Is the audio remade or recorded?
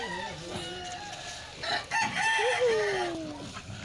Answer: recorded